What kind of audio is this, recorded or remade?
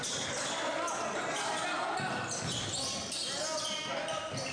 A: recorded